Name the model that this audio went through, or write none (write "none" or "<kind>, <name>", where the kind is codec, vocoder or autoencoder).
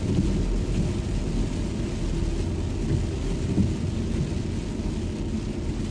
none